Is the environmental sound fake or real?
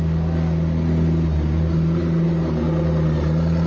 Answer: real